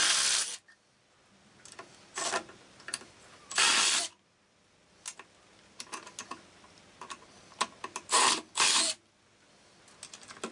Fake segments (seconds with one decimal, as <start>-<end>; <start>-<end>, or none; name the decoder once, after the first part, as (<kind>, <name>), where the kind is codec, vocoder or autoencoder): none